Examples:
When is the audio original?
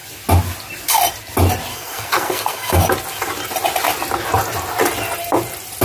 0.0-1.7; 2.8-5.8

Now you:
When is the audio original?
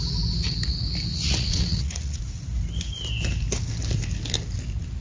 0.0-1.1; 2.2-5.0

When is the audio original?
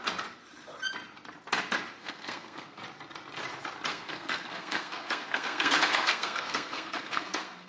0.0-2.0; 2.8-3.9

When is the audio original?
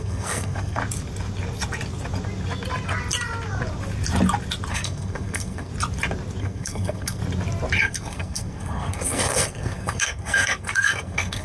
0.8-4.7; 5.7-6.4; 7.2-7.8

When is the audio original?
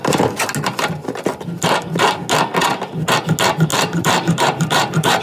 0.0-3.7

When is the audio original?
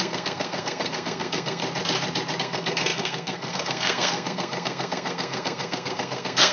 1.6-2.4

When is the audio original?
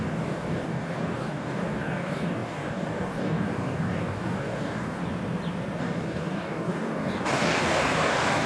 5.0-5.8